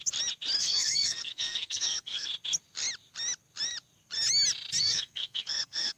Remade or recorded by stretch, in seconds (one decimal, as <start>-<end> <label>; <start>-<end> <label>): 0.0-0.6 recorded; 0.6-2.3 remade; 2.3-4.8 recorded; 4.8-6.0 remade